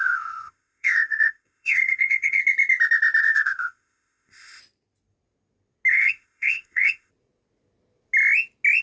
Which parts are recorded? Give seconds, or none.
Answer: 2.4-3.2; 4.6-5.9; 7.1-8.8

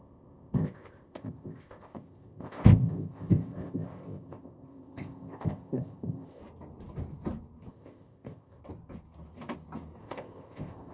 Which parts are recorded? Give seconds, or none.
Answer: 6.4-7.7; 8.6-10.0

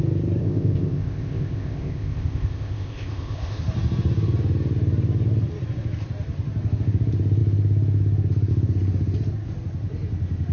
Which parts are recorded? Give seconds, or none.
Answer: 0.0-0.4; 3.6-10.5

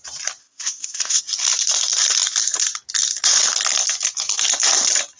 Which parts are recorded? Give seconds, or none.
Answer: 0.0-0.4; 1.2-5.2